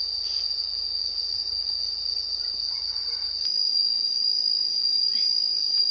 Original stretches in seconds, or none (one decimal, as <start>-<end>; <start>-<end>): 0.0-5.9